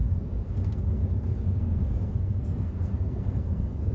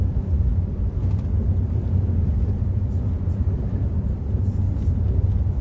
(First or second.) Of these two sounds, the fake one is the first